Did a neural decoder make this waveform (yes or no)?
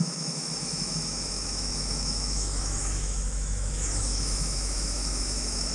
yes